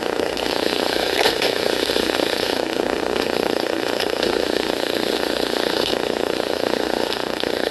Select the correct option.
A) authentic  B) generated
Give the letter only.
B